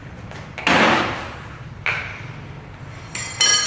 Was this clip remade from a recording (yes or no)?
no